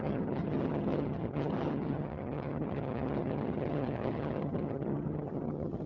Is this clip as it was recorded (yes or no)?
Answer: no